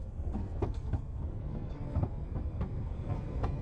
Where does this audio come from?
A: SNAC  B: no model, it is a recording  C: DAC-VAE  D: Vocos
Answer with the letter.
A